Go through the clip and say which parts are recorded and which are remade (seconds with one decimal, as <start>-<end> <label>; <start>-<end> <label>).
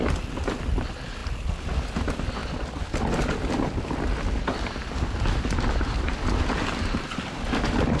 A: 0.0-8.0 recorded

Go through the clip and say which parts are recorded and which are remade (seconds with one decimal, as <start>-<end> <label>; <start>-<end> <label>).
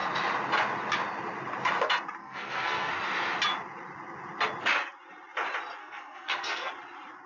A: 0.0-2.2 recorded; 2.2-2.9 remade; 2.9-5.8 recorded; 5.8-6.7 remade; 6.7-7.3 recorded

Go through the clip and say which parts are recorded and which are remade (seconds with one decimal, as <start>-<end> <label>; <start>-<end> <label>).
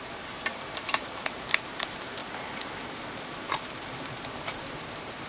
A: 0.0-2.2 remade; 2.2-4.0 recorded; 4.0-5.3 remade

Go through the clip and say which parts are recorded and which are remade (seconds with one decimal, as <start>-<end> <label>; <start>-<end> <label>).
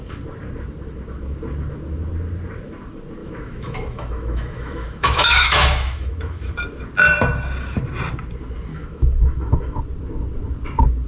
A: 0.0-3.2 recorded; 3.2-6.5 remade; 6.5-8.7 recorded; 8.7-9.8 remade; 9.8-11.1 recorded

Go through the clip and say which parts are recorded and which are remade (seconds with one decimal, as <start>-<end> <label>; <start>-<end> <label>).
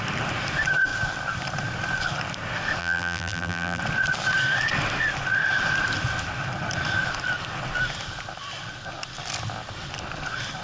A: 0.0-2.8 recorded; 2.8-3.8 remade; 3.8-10.6 recorded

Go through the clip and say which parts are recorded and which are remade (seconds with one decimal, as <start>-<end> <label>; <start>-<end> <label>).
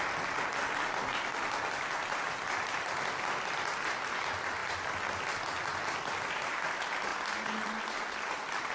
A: 0.0-8.7 recorded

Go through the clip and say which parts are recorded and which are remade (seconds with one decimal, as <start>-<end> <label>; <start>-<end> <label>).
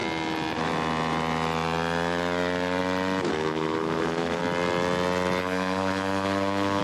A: 0.0-3.3 recorded; 3.3-4.4 remade; 4.4-5.4 recorded; 5.4-6.8 remade